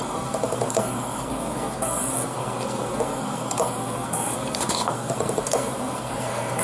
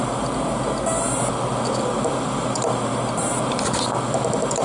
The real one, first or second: second